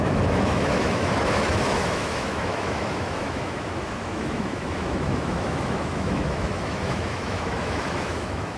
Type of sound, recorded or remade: remade